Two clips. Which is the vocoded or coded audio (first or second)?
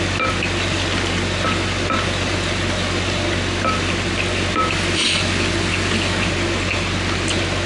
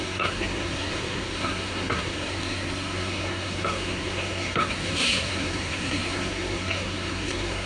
second